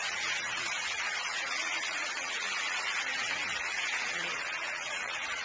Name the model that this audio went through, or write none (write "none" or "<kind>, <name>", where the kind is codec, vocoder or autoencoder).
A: vocoder, Vocos